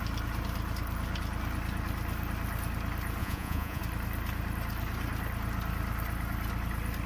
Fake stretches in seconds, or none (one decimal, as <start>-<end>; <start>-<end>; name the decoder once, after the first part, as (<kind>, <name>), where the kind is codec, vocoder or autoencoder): 3.2-3.8 (vocoder, Vocos)